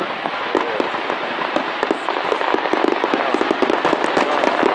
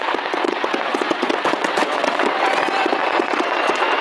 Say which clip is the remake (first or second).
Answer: second